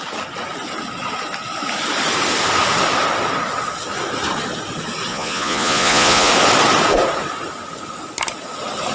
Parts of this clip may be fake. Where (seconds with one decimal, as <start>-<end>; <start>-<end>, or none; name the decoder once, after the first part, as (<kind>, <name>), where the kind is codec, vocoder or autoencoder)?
5.1-6.3 (vocoder, Vocos)